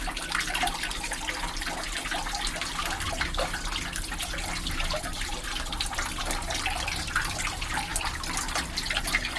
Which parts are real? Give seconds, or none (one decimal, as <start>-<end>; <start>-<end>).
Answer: 0.0-9.4